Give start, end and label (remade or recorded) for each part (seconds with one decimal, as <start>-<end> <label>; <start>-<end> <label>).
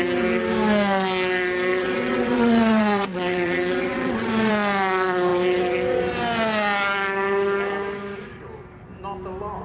0.0-1.7 recorded; 1.7-4.5 remade; 4.5-9.6 recorded